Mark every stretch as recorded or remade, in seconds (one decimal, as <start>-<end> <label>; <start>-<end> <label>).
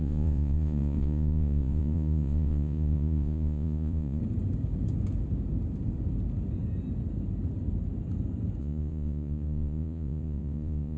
0.0-4.2 remade; 4.2-8.6 recorded; 8.6-11.0 remade